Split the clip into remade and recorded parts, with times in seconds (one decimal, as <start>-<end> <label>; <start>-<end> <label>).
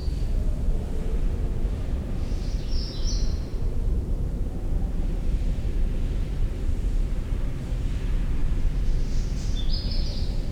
0.0-8.4 remade; 8.4-9.6 recorded; 9.6-10.5 remade